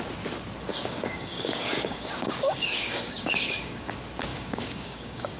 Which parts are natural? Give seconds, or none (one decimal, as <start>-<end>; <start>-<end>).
0.0-0.7; 3.9-4.3